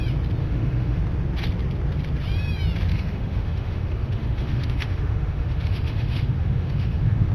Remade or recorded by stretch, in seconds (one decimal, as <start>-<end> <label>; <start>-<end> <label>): 0.0-0.4 recorded; 0.4-1.0 remade; 1.0-2.9 recorded; 2.9-7.3 remade